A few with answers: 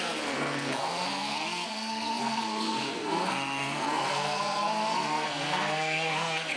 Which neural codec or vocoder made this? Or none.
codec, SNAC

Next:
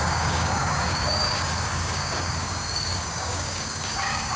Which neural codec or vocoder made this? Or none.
codec, DAC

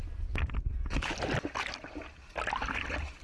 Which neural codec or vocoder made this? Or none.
none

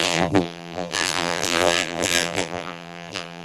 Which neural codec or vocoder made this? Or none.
vocoder, BigVGAN v2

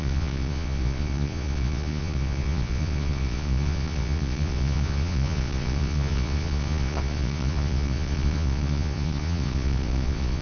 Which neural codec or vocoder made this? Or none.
vocoder, Vocos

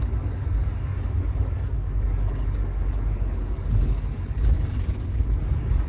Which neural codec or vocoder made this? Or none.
codec, DAC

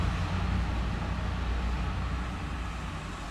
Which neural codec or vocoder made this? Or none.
none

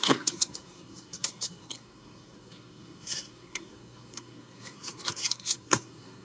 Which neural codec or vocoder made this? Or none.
codec, SNAC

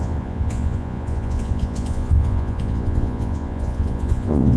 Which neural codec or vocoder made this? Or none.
vocoder, Vocos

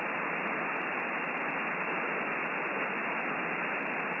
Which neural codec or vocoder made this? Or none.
none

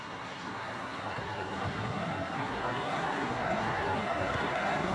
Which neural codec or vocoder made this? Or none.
codec, SNAC